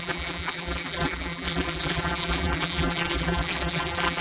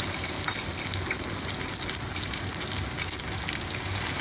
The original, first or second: second